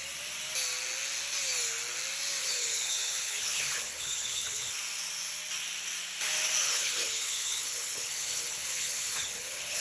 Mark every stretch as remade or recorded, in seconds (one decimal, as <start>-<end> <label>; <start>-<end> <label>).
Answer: 0.0-2.4 recorded; 2.4-4.8 remade; 4.8-6.6 recorded; 6.6-9.8 remade